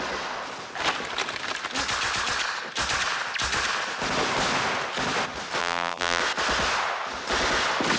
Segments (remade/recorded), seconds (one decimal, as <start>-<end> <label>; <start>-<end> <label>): 0.0-5.6 recorded; 5.6-6.2 remade; 6.2-8.0 recorded